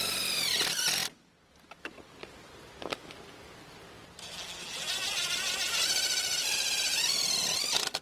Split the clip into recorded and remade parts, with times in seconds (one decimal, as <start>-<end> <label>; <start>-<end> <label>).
0.0-8.0 recorded